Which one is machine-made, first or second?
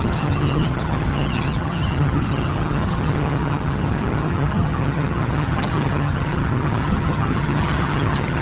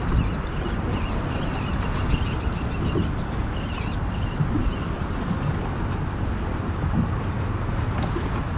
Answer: first